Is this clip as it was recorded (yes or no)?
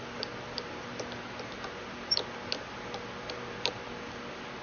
yes